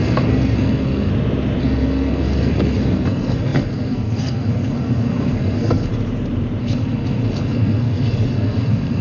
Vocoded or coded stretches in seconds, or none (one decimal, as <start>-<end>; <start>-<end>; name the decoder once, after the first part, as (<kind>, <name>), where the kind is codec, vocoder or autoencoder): 0.0-1.1 (codec, SNAC); 1.6-5.9; 6.6-9.0

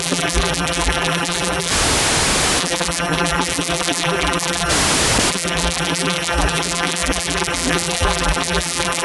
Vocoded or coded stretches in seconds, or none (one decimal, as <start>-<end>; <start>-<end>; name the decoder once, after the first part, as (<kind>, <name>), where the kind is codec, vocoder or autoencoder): 0.0-1.7 (vocoder, BigVGAN v2); 2.6-4.7; 5.3-9.0

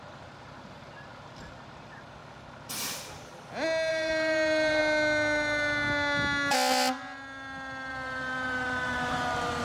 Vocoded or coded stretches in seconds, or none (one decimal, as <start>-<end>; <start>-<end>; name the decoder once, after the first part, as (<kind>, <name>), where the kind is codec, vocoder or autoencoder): 0.0-1.1 (vocoder, BigVGAN v2); 1.7-2.2; 3.9-4.8; 7.9-9.6

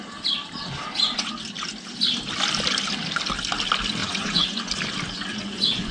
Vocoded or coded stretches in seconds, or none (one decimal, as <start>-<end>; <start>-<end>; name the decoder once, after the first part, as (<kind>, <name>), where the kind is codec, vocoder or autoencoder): 4.0-4.7 (vocoder, Vocos); 5.3-5.9

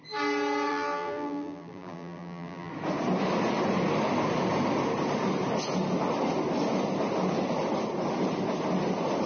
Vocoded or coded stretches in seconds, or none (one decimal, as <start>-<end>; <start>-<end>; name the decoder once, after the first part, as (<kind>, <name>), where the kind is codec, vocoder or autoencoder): 0.7-2.7 (vocoder, BigVGAN v2)

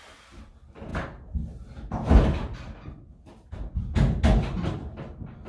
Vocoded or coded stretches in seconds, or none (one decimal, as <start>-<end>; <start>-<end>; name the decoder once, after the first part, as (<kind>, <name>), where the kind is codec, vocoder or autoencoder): none